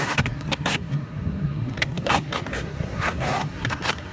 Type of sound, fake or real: fake